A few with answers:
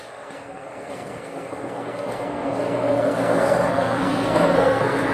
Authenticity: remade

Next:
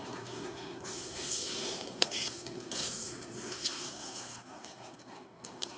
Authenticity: remade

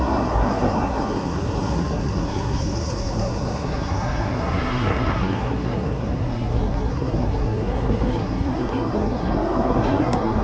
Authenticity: remade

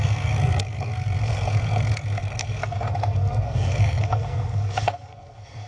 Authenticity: remade